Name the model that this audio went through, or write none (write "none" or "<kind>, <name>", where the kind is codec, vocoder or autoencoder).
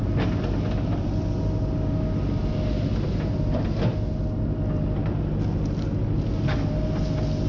none